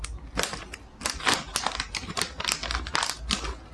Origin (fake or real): real